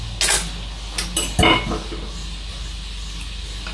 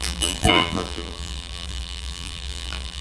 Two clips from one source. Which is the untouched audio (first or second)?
first